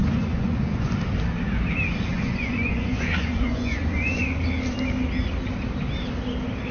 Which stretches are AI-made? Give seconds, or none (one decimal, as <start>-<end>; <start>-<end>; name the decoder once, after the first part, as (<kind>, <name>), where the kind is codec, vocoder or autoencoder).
0.0-0.9 (vocoder, Vocos); 2.1-4.4